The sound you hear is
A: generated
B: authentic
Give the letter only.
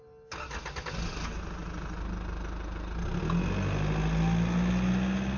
B